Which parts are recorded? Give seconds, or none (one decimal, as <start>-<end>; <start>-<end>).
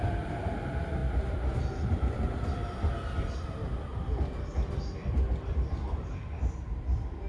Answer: 0.0-7.3